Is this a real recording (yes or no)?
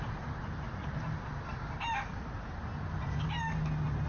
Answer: yes